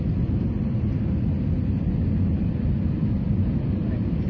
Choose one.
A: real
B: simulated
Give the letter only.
B